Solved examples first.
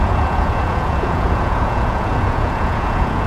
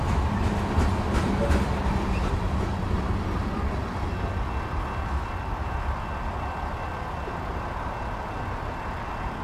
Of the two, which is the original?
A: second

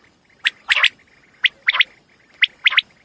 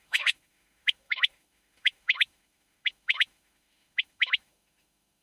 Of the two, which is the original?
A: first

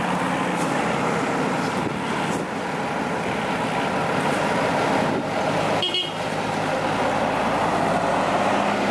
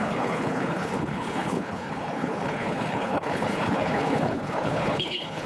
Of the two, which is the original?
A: first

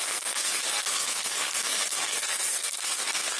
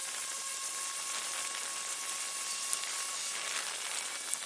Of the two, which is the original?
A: second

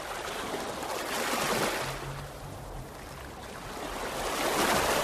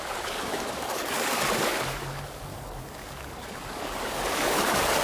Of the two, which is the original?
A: first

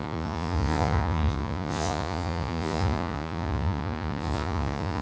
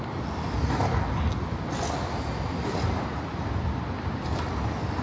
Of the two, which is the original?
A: second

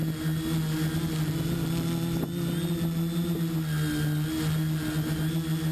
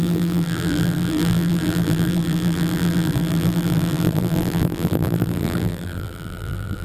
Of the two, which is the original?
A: first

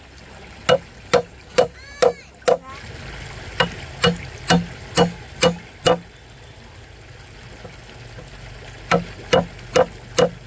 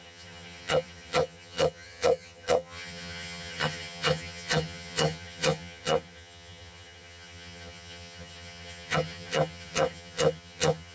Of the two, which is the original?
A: first